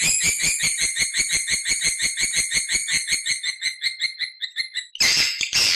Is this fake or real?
real